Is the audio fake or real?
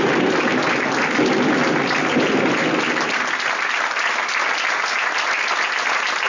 real